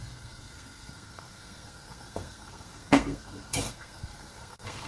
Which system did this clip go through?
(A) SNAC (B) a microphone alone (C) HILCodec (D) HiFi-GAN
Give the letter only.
A